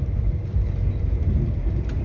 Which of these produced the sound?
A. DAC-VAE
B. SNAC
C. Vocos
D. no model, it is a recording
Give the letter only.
D